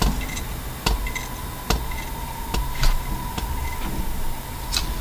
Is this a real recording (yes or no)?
yes